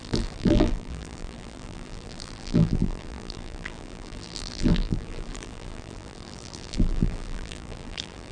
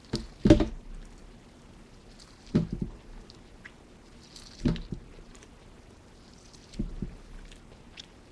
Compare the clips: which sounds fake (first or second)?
first